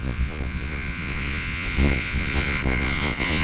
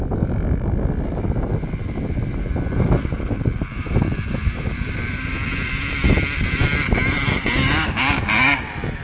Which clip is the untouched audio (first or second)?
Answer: second